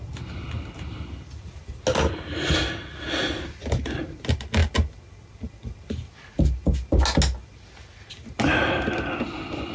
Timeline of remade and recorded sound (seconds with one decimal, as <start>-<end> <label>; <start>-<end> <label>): 0.0-9.7 recorded